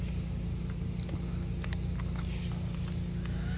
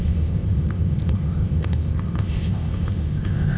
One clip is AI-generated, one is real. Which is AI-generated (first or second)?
second